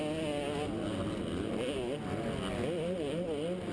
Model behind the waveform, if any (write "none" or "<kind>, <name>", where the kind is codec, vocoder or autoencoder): none